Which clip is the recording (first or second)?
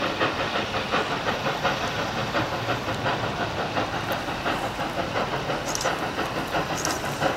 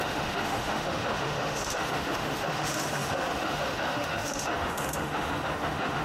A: first